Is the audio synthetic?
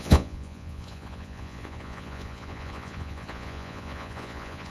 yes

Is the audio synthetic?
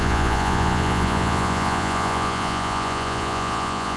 yes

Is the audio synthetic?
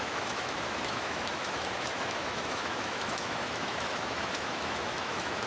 yes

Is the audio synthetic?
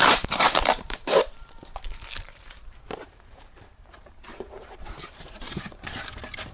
yes